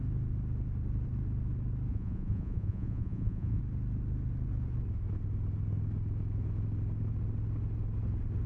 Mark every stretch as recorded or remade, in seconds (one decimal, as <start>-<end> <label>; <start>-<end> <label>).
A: 0.0-1.9 recorded; 1.9-3.6 remade; 3.6-8.5 recorded

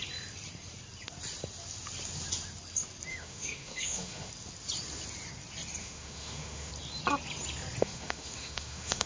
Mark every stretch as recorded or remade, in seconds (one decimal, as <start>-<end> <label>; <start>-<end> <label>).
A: 0.0-3.1 recorded; 3.1-4.3 remade; 4.3-5.8 recorded; 5.8-6.7 remade; 6.7-7.8 recorded; 7.8-9.1 remade

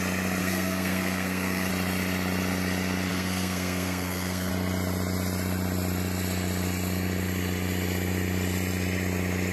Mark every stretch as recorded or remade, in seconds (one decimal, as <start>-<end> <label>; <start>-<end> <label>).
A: 0.0-0.4 recorded; 0.4-1.7 remade; 1.7-3.1 recorded; 3.1-4.5 remade; 4.5-9.5 recorded

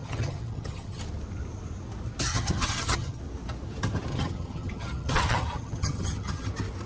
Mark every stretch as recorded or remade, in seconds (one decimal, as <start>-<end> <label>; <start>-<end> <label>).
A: 0.0-1.0 remade; 1.0-2.3 recorded; 2.3-3.2 remade; 3.2-4.1 recorded; 4.1-6.5 remade; 6.5-6.9 recorded

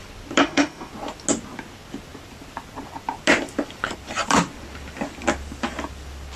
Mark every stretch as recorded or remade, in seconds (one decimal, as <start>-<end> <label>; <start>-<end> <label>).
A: 0.0-0.4 recorded; 0.4-0.9 remade; 0.9-6.4 recorded

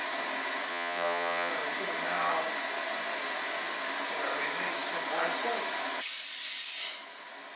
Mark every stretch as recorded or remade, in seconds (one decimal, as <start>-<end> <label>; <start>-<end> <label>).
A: 0.0-0.7 recorded; 0.7-1.5 remade; 1.5-7.6 recorded

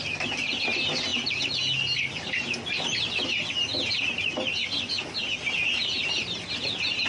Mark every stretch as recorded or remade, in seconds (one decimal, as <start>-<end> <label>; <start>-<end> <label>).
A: 0.0-7.1 recorded